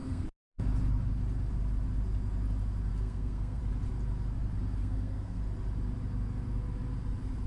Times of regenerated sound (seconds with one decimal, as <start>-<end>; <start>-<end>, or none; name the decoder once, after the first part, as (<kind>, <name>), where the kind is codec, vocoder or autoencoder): 0.0-0.6 (codec, SNAC); 2.9-3.6; 4.8-5.4